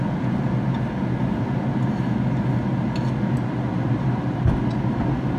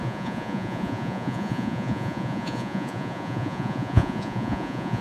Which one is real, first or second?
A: first